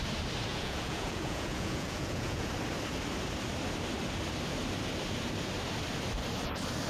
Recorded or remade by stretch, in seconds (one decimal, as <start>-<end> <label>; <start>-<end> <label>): 0.0-0.5 recorded; 0.5-2.5 remade; 2.5-6.9 recorded

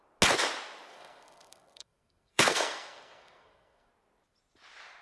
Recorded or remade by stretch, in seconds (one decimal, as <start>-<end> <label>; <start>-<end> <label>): 0.0-0.9 recorded; 0.9-3.9 remade; 3.9-5.0 recorded

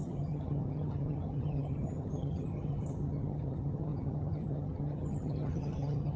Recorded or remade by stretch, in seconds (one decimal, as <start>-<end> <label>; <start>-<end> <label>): 0.0-6.2 remade

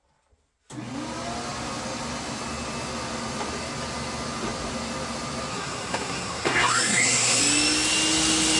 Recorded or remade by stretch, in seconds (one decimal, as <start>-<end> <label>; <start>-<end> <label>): 0.0-5.5 recorded; 5.5-7.4 remade; 7.4-8.6 recorded

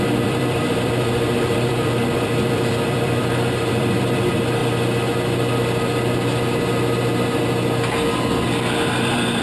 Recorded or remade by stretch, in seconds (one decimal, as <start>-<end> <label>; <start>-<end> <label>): 0.0-4.6 remade; 4.6-9.0 recorded; 9.0-9.4 remade

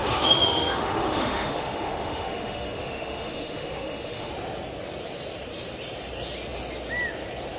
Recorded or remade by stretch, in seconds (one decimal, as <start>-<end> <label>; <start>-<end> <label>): 0.0-4.3 remade; 4.3-7.6 recorded